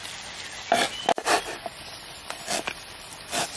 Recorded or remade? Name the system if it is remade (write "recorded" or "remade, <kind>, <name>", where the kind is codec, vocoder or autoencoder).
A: recorded